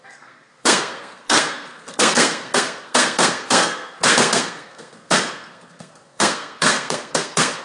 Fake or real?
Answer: fake